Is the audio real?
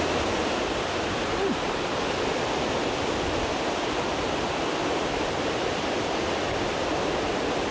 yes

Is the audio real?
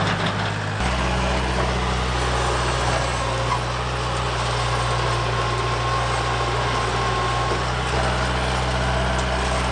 yes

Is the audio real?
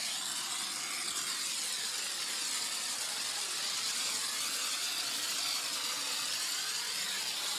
yes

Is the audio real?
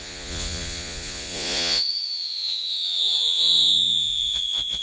no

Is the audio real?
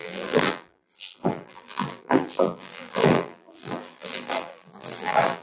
no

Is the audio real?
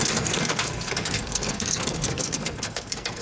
no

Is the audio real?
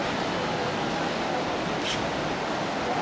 yes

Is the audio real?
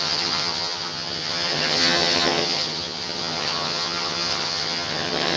no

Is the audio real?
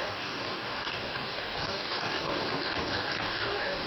no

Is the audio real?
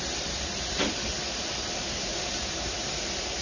yes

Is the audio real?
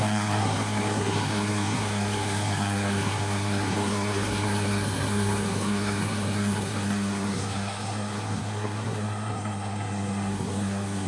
no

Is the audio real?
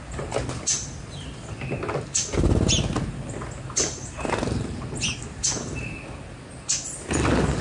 yes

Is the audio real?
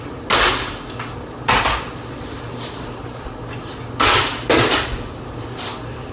yes